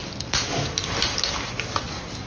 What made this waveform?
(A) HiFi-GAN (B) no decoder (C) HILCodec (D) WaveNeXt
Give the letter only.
B